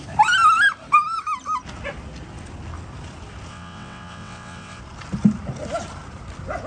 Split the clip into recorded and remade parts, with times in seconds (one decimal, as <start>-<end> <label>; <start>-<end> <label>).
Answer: 0.0-3.5 recorded; 3.5-4.8 remade; 4.8-6.7 recorded